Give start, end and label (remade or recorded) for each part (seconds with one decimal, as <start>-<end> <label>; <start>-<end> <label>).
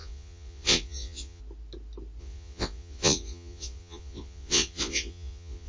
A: 0.0-1.4 remade; 1.4-2.2 recorded; 2.2-5.7 remade